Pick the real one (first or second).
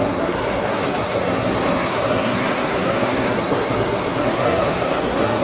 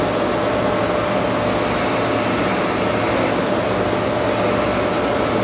second